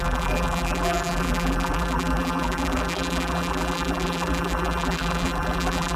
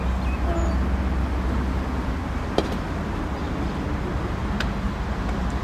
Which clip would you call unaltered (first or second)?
second